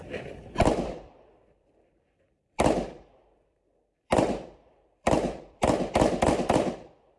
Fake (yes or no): yes